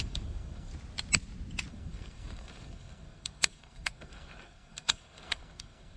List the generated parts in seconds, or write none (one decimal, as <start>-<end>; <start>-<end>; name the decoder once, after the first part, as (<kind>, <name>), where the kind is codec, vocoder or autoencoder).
0.0-0.7 (codec, SNAC); 1.7-6.0